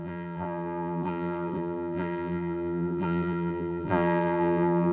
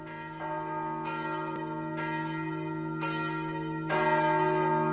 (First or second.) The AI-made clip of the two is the first